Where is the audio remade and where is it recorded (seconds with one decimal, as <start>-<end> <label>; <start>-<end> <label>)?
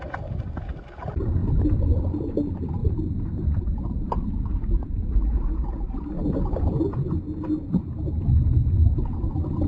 0.0-9.7 recorded